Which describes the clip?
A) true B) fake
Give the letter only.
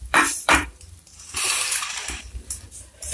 B